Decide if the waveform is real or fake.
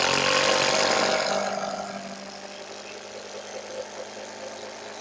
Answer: real